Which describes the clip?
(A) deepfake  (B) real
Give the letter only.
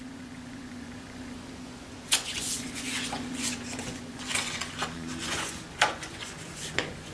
A